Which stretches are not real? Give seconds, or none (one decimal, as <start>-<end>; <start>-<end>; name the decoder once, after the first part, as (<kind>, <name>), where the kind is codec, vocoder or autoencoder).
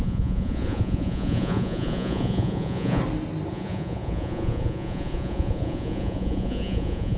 0.0-3.0 (vocoder, Vocos); 3.5-7.2